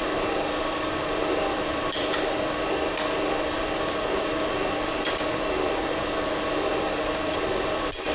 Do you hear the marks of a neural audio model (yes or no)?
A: yes